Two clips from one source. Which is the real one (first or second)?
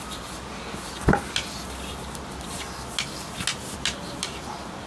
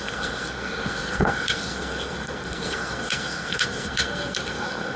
first